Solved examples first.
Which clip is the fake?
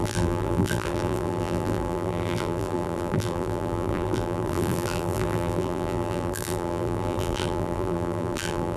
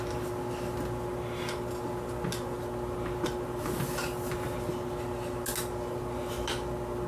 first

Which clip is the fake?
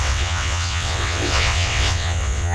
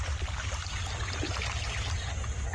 first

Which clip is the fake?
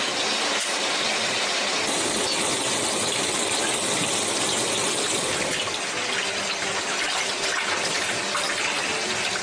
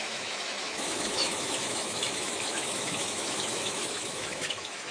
second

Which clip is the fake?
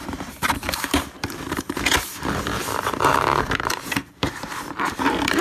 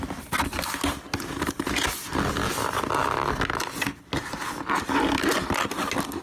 first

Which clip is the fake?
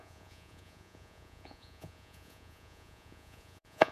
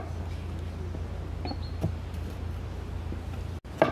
first